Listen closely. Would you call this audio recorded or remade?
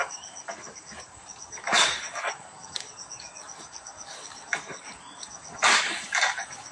remade